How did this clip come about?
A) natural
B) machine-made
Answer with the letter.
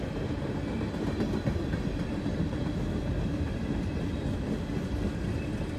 B